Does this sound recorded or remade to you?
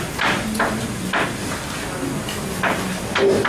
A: recorded